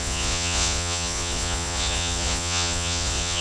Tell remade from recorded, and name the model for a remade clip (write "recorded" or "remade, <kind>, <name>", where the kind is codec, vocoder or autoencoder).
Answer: remade, vocoder, Vocos